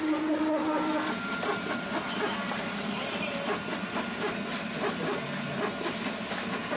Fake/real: real